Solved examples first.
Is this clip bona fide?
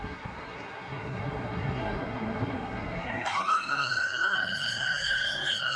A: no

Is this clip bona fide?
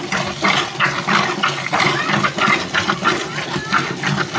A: yes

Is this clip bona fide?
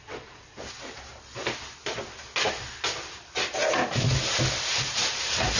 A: yes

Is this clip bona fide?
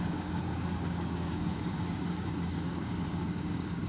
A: no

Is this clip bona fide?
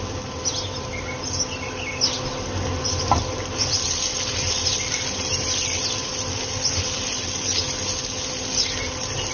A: yes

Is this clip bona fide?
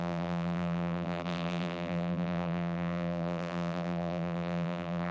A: no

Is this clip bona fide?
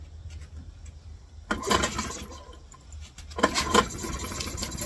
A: yes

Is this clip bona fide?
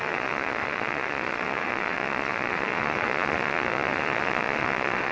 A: no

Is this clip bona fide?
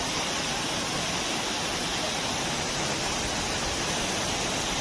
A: yes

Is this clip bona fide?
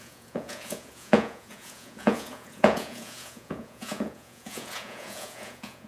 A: no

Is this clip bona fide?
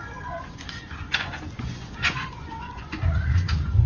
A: no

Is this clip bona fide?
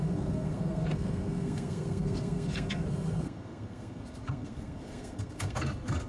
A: no